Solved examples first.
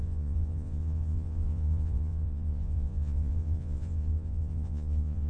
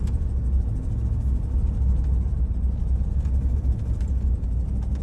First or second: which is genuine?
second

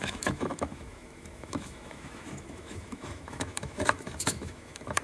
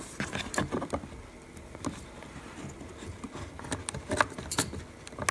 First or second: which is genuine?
second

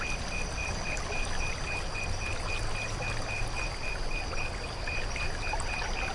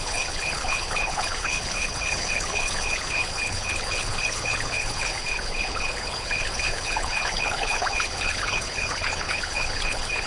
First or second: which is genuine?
first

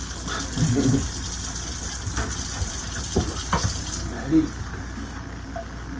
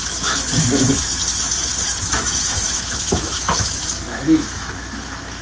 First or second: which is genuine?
first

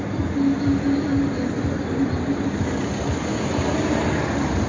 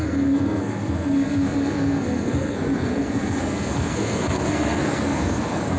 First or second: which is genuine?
first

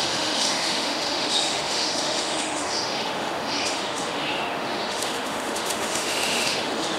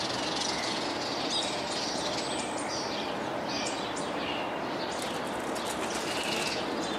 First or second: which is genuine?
second